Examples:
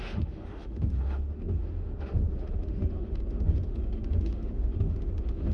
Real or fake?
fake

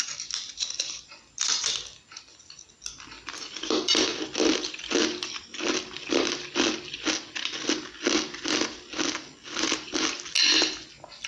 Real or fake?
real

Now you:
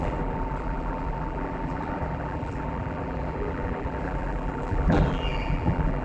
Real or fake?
fake